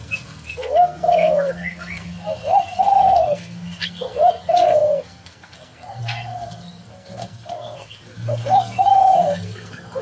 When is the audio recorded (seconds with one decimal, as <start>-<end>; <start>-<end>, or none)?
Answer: none